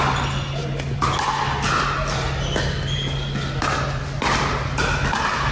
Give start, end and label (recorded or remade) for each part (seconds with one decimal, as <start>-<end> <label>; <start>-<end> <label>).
0.0-5.5 recorded